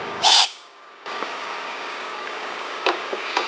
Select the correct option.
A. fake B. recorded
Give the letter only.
A